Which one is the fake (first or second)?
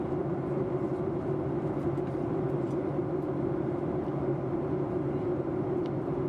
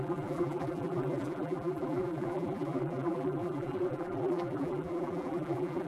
second